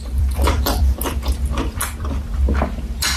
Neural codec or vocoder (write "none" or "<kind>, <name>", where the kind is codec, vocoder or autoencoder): vocoder, BigVGAN v2